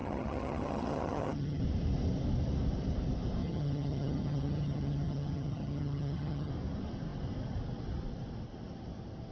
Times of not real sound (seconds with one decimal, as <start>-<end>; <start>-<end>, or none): 0.0-1.6; 3.4-6.5